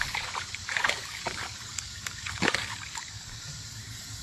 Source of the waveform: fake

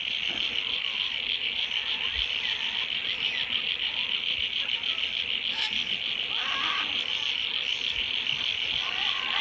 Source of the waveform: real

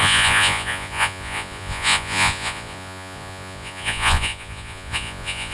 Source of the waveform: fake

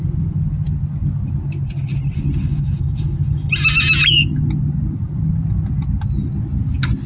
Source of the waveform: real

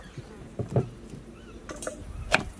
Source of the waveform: fake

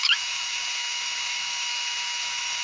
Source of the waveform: fake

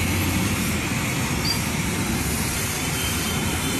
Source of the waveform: fake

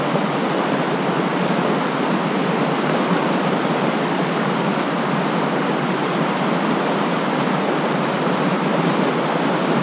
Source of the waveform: real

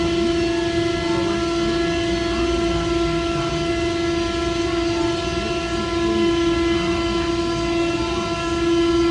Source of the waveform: real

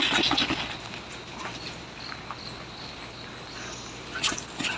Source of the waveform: real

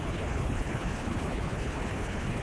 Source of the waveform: fake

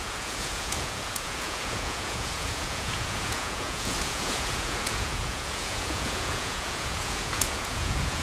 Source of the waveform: fake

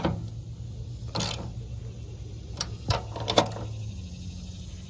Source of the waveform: real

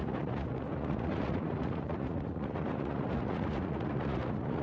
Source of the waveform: fake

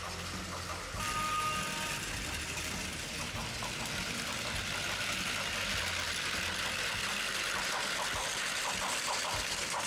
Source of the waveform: real